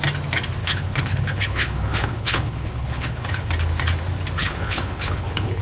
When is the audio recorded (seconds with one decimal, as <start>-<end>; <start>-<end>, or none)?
0.0-0.6; 3.5-4.4